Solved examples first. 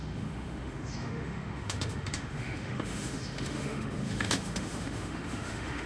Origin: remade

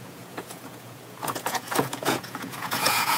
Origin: remade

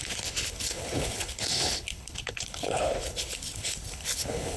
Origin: remade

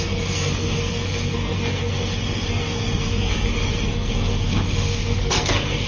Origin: remade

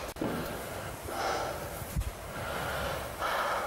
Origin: recorded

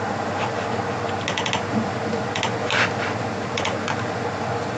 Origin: recorded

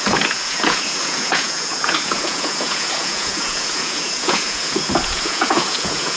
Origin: remade